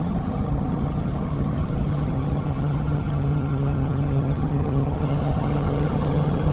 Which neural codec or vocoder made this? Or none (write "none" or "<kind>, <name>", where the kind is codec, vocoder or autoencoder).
vocoder, HiFi-GAN